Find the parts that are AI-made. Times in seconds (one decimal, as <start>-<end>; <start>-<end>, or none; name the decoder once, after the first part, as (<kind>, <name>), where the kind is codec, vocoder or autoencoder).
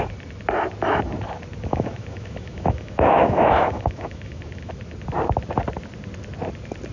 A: 1.7-4.7 (autoencoder, DAC-VAE)